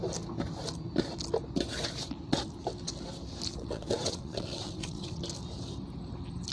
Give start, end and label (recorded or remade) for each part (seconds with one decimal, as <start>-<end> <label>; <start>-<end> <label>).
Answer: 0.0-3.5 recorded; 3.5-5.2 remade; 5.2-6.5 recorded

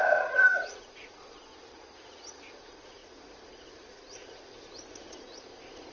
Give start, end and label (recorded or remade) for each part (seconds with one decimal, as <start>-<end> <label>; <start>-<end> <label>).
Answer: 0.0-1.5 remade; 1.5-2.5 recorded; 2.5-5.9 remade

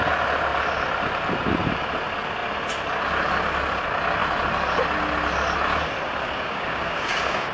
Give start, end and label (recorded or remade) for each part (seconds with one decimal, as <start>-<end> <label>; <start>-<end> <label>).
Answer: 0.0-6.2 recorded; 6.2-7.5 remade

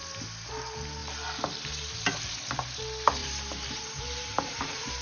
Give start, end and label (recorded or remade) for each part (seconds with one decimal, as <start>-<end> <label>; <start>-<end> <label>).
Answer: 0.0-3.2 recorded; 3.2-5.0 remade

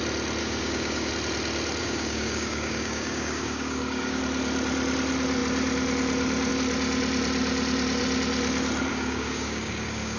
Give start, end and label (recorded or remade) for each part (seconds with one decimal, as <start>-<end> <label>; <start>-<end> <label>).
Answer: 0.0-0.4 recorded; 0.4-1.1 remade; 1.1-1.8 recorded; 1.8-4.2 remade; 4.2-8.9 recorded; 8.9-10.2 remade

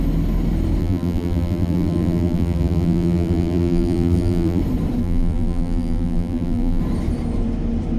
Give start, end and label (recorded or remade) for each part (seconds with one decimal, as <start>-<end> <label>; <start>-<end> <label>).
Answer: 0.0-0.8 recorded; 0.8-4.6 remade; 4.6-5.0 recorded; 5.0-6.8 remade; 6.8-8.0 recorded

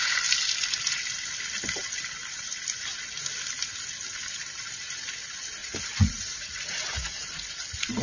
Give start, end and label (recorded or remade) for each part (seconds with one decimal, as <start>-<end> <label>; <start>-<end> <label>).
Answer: 0.0-5.6 recorded; 5.6-7.5 remade; 7.5-8.0 recorded